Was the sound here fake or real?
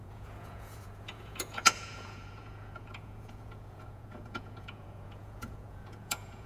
fake